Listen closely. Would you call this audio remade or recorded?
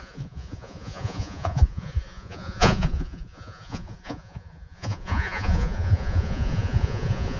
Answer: remade